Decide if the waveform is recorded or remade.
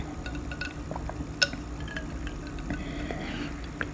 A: recorded